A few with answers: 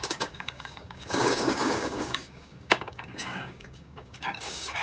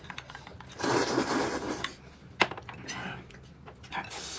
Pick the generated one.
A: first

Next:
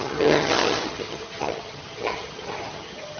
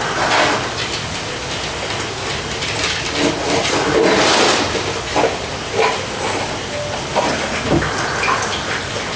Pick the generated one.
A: first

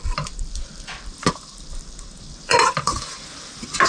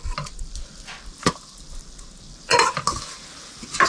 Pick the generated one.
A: first